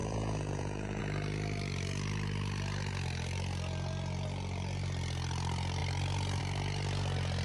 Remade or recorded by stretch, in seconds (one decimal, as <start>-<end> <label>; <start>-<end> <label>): 0.0-1.0 remade; 1.0-7.4 recorded